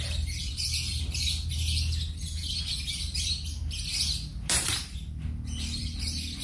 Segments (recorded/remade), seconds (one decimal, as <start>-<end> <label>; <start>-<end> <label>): 0.0-6.4 recorded